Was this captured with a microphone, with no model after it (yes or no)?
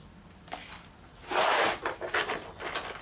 yes